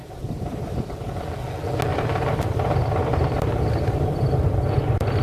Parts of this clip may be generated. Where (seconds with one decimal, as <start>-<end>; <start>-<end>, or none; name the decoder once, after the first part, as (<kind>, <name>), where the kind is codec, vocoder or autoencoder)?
0.0-1.2 (vocoder, BigVGAN v2); 1.9-5.2